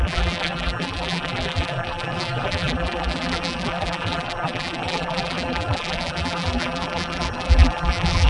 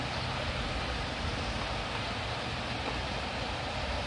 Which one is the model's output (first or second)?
first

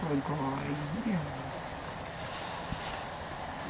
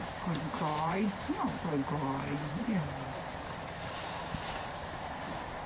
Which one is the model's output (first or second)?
second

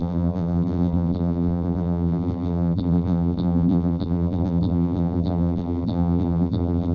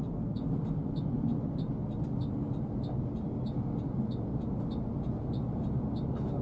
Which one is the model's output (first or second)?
first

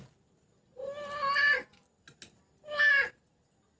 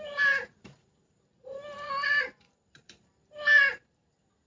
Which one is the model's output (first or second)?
second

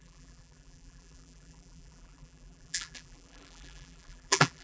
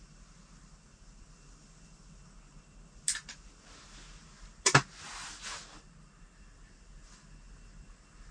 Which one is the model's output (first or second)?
first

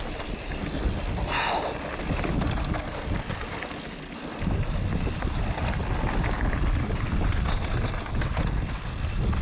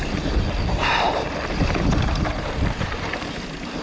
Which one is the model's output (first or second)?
second